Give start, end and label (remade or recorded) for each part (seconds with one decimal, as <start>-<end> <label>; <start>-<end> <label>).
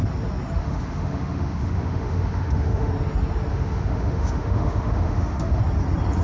0.0-0.6 recorded; 0.6-2.9 remade; 2.9-3.5 recorded; 3.5-5.6 remade; 5.6-6.2 recorded